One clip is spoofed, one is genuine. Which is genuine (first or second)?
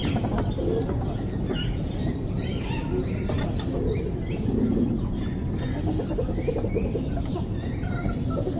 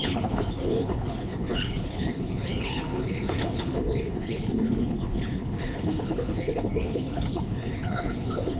first